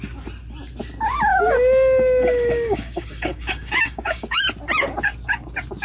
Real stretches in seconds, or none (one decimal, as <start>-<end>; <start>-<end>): 0.0-1.3; 4.4-5.8